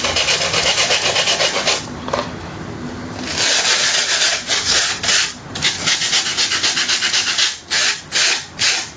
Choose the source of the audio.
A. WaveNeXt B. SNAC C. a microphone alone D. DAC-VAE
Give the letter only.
C